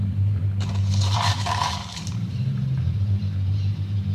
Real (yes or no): no